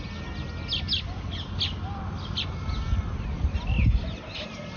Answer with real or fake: real